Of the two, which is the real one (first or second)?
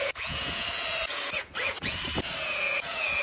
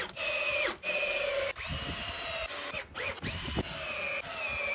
second